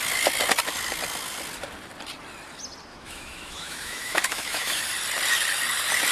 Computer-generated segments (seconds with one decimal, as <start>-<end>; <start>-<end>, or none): 2.9-4.8